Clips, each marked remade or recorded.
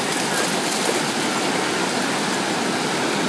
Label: recorded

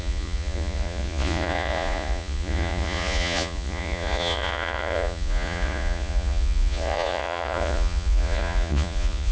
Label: remade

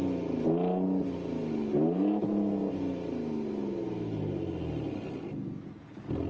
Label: recorded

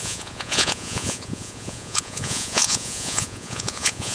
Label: remade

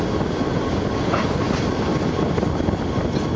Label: recorded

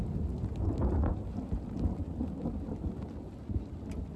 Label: recorded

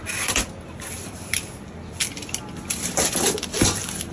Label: recorded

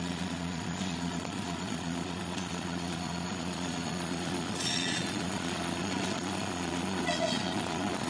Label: remade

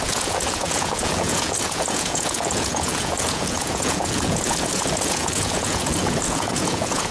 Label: remade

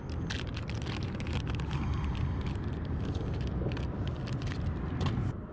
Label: recorded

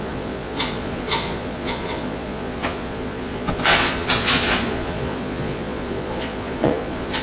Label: remade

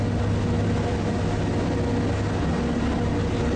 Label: recorded